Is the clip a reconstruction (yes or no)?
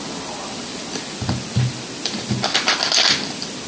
no